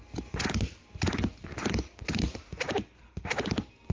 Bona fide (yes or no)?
yes